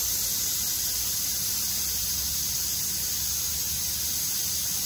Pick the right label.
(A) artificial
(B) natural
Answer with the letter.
B